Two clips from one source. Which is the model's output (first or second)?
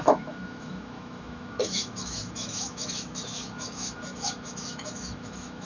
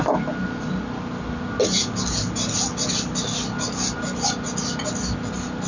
first